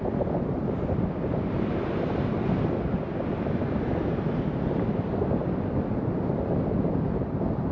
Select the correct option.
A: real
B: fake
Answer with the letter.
A